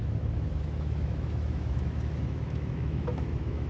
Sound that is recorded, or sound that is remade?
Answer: remade